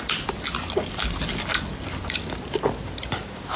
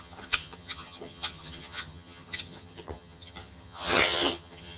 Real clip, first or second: first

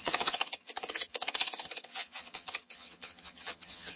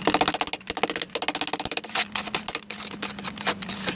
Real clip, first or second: second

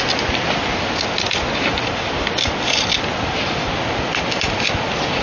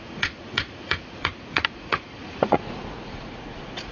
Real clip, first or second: first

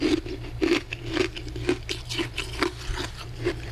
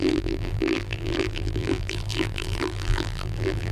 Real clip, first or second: first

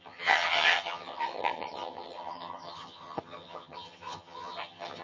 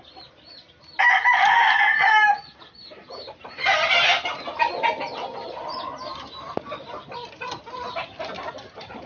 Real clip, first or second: second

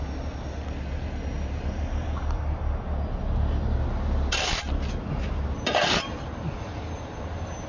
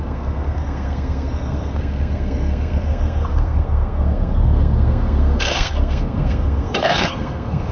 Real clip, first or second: first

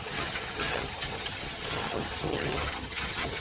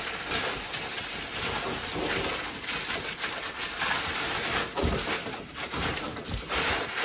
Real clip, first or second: second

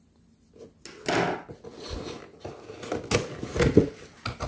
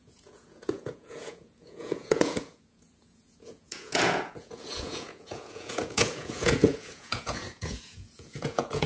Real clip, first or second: first